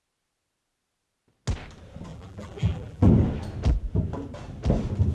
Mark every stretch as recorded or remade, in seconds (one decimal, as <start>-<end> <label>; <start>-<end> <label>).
0.0-2.1 recorded; 2.1-3.1 remade; 3.1-5.1 recorded